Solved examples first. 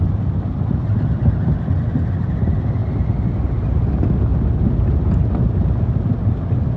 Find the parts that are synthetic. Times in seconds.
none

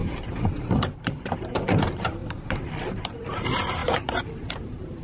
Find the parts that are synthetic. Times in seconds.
0.0-5.0 (vocoder, BigVGAN v2)